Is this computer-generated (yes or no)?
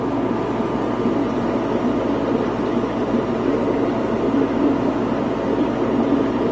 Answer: no